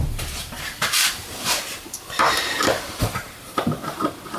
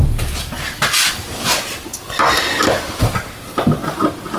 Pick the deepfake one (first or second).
first